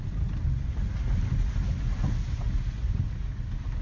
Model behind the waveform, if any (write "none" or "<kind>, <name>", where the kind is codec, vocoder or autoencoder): none